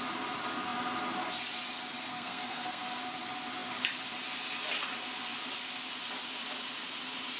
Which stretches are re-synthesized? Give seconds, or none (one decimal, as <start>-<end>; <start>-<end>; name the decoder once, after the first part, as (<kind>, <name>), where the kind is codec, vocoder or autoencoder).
2.1-3.0 (codec, SNAC)